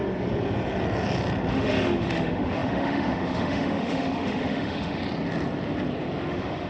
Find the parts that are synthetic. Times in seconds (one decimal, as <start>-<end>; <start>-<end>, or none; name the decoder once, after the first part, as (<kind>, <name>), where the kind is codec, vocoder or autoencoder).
1.5-5.0 (autoencoder, DAC-VAE); 6.3-6.7